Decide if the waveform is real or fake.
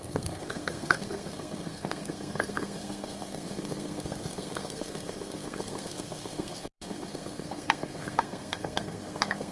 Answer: fake